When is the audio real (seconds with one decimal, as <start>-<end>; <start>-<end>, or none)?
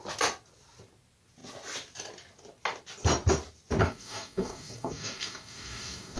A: 0.0-3.8